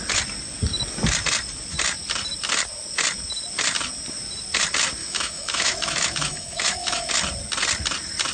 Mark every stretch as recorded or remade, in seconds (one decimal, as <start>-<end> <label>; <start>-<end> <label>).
0.0-5.0 recorded; 5.0-7.1 remade; 7.1-8.3 recorded